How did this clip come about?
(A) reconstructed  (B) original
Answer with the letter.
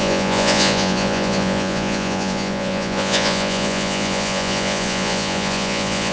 A